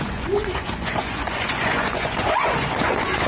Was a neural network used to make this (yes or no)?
yes